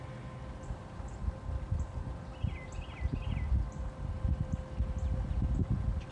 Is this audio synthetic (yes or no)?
no